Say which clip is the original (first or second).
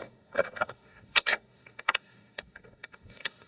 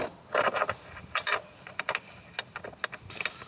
second